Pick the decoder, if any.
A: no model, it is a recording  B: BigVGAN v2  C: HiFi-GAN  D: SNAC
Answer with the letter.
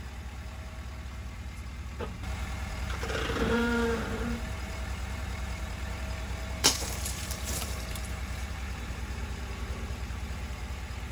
B